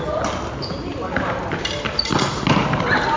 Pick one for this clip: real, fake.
real